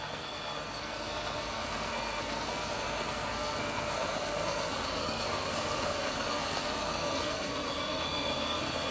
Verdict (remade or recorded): remade